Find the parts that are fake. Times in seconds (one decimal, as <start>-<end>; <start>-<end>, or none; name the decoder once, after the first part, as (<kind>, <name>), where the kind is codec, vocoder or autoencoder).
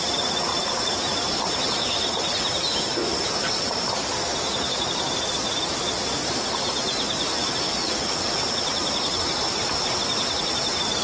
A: 0.0-6.9 (vocoder, BigVGAN v2); 9.0-11.0